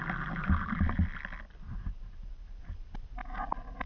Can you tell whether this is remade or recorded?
recorded